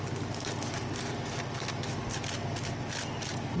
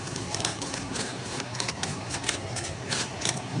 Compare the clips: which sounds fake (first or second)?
second